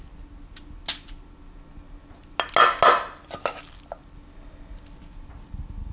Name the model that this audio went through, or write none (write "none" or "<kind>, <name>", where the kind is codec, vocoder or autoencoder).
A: none